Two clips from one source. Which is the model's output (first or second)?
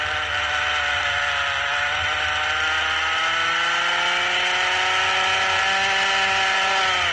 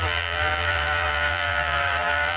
second